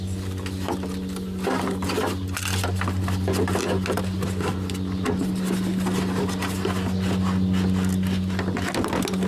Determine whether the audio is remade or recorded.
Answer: recorded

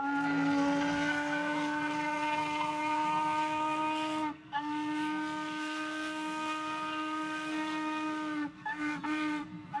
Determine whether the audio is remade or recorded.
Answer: remade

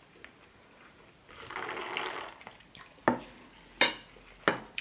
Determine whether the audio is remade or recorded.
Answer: recorded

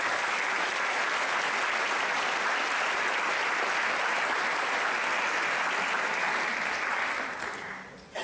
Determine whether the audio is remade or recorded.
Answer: recorded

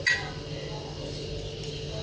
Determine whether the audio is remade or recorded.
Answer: recorded